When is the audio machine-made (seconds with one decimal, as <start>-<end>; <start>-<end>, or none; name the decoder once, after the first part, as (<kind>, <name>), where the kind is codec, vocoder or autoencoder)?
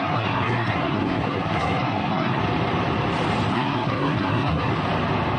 0.0-2.4 (codec, SNAC); 3.5-4.7